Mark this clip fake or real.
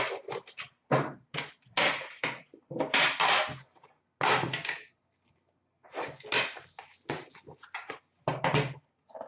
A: real